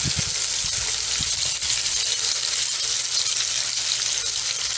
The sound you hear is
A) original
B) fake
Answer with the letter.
A